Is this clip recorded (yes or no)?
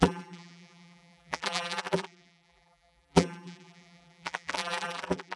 no